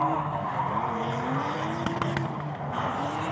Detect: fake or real real